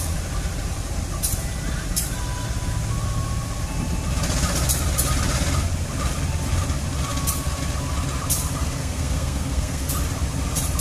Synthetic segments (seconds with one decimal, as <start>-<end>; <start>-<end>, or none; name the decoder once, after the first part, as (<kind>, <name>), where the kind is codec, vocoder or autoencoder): 8.8-9.9 (codec, SNAC)